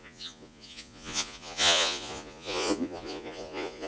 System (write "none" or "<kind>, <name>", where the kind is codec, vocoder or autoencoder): vocoder, Vocos